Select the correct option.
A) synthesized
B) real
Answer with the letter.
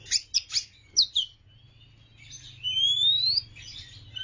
B